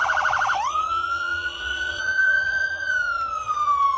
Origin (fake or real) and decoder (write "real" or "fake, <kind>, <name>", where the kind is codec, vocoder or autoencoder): fake, vocoder, Vocos